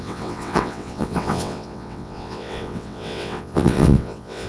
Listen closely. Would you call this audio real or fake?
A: fake